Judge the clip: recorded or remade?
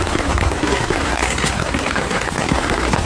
remade